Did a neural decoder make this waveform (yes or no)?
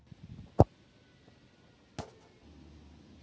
no